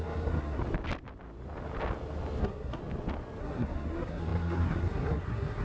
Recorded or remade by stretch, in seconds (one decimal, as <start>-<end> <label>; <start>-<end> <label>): 0.0-0.6 remade; 0.6-2.4 recorded; 2.4-2.8 remade; 2.8-3.4 recorded; 3.4-5.6 remade